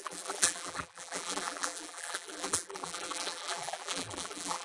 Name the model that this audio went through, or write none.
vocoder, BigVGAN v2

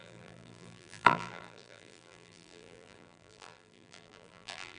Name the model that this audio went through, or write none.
vocoder, BigVGAN v2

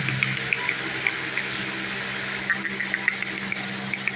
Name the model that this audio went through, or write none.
none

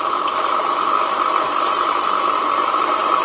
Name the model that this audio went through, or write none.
none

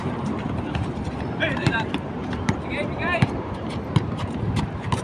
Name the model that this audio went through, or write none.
vocoder, BigVGAN v2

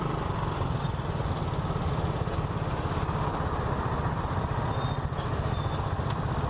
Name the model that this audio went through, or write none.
none